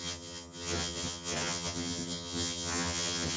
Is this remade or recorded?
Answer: remade